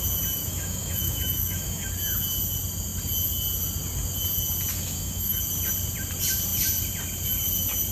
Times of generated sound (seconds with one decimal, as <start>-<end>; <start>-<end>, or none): 0.4-1.9; 4.7-5.4